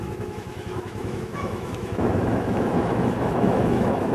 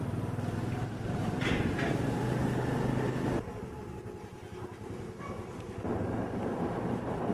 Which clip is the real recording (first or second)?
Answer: second